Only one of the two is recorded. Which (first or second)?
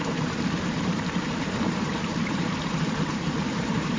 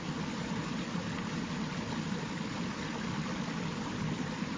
second